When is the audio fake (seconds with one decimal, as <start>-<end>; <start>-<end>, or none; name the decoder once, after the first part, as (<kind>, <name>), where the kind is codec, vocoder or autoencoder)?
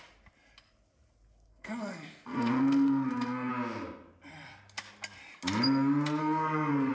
1.5-3.5 (codec, SNAC); 6.2-6.9